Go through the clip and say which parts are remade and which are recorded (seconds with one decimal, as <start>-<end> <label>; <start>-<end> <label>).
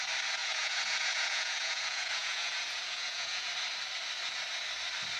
0.0-0.4 recorded; 0.4-3.5 remade; 3.5-5.2 recorded